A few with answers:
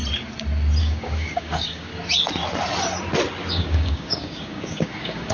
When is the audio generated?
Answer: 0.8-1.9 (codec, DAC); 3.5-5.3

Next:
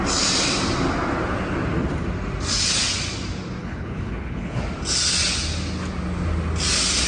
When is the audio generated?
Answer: 3.6-4.6 (codec, HILCodec)

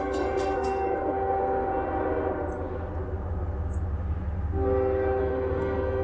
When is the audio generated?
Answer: 0.0-1.7 (codec, SNAC); 5.2-6.0